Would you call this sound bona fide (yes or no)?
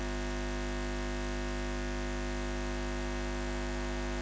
yes